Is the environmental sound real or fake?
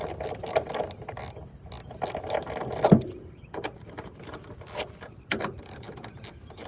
real